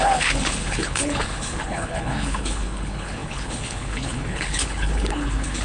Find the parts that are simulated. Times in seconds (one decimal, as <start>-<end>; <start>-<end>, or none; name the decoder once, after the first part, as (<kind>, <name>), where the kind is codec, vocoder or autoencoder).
0.0-5.6 (codec, HILCodec)